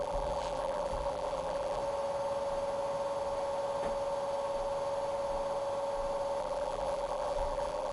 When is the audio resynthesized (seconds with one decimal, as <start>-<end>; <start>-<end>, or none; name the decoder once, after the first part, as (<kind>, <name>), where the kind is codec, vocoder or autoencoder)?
0.0-1.8 (vocoder, BigVGAN v2); 6.4-7.9